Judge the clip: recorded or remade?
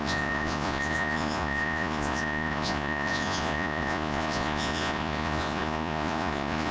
remade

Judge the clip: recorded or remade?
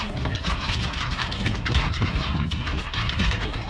remade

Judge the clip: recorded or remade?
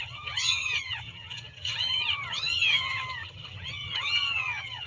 remade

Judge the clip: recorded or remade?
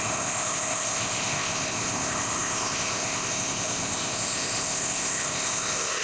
remade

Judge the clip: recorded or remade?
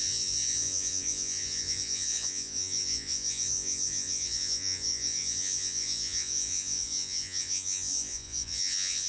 remade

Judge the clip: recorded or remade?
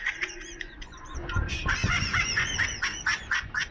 remade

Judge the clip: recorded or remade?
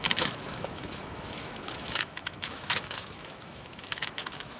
remade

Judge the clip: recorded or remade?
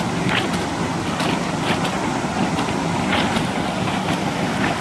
recorded